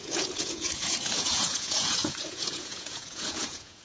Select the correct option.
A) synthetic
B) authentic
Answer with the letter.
A